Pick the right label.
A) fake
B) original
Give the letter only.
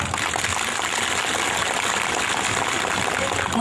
B